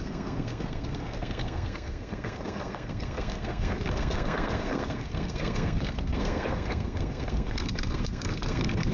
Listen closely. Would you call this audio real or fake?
fake